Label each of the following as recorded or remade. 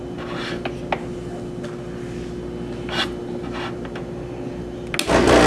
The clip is recorded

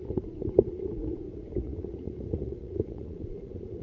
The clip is remade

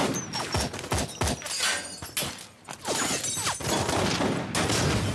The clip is recorded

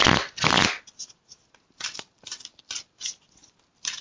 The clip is recorded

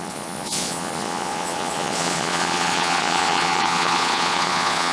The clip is remade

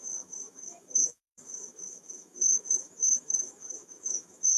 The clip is remade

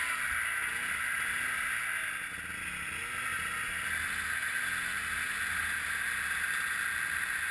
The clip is recorded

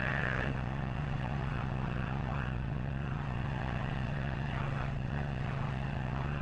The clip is remade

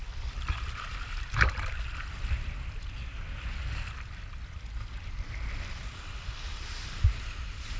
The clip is recorded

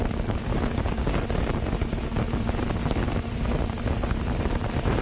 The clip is recorded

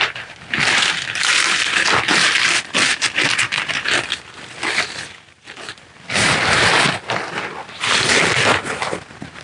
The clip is recorded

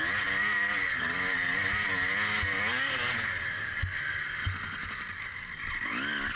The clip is recorded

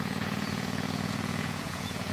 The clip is remade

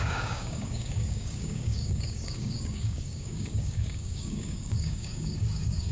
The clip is remade